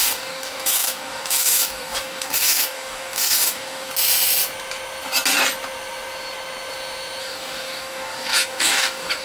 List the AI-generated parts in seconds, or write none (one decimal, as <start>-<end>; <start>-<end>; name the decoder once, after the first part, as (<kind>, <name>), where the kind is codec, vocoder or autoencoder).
0.0-3.9 (codec, DAC); 7.2-9.2